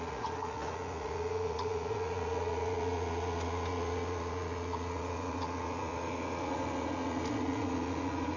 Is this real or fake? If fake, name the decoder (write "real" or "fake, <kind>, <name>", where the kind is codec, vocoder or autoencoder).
fake, vocoder, Vocos